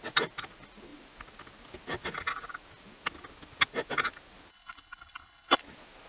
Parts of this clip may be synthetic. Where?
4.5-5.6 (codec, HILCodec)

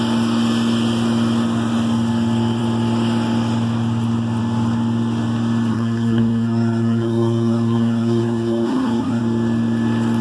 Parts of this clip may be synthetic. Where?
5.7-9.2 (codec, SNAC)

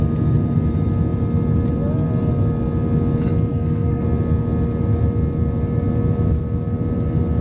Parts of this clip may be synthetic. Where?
3.5-4.0 (codec, SNAC)

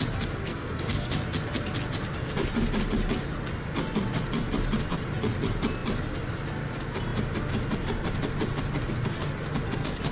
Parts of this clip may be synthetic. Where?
0.5-1.1 (codec, SNAC)

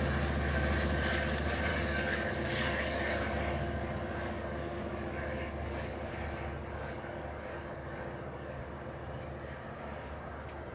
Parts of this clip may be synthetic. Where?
1.7-6.1 (codec, DAC); 6.6-8.6

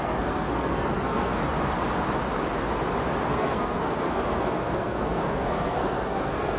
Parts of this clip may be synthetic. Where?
0.0-1.4 (codec, SNAC); 3.3-6.6